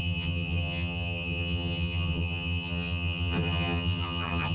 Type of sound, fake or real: fake